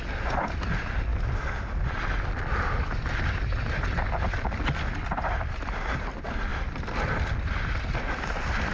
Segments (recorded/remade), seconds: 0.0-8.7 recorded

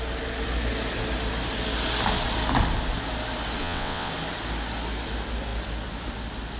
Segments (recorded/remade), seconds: 0.0-3.6 recorded; 3.6-4.1 remade; 4.1-6.6 recorded